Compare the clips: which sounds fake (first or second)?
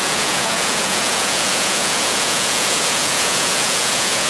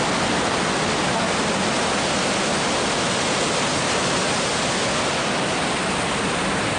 first